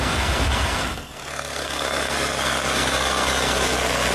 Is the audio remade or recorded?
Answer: remade